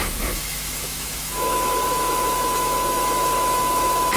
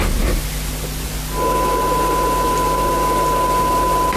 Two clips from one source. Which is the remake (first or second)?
first